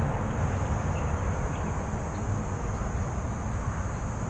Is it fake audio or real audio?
real